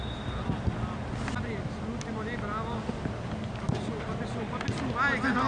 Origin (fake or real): real